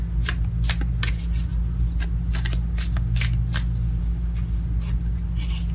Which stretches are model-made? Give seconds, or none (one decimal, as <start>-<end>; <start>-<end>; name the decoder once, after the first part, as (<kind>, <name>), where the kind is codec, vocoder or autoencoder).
none